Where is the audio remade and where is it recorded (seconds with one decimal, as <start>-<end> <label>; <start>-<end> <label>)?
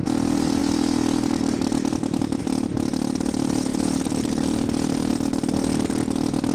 0.0-0.6 recorded; 0.6-2.4 remade; 2.4-6.5 recorded